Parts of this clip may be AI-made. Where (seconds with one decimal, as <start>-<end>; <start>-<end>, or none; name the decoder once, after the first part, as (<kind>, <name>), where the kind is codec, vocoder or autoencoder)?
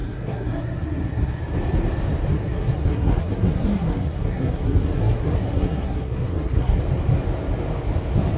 0.0-1.4 (codec, SNAC); 2.3-6.8